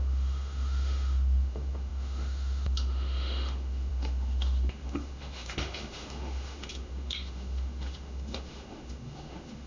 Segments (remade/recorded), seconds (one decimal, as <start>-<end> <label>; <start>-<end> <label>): 0.0-9.7 remade